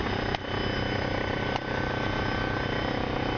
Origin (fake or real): real